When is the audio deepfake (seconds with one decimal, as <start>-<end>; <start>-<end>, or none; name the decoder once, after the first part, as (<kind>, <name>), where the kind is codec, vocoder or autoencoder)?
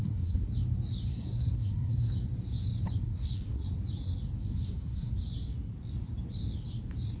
0.0-0.5 (codec, SNAC); 1.1-2.1; 3.0-3.7; 4.4-5.1